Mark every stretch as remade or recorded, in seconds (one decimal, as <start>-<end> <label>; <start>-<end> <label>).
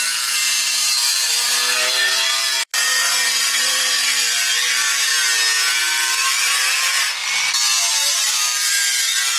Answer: 0.0-2.7 remade; 2.7-3.3 recorded; 3.3-5.1 remade; 5.1-5.8 recorded; 5.8-7.2 remade; 7.2-7.8 recorded; 7.8-9.4 remade